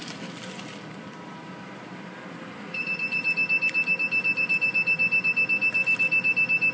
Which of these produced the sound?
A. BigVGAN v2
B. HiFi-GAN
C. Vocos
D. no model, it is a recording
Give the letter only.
A